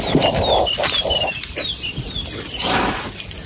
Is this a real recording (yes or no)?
yes